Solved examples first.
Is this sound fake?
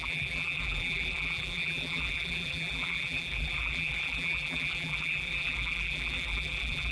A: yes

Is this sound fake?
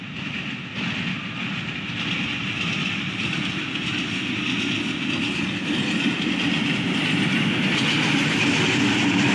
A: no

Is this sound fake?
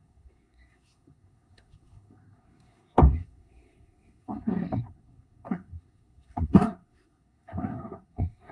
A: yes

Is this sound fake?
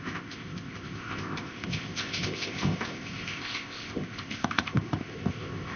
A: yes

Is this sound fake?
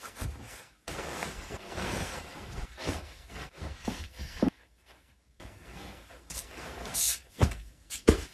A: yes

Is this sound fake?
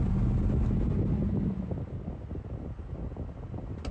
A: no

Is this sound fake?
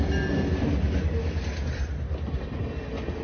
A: no